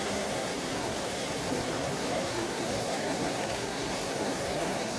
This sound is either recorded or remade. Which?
remade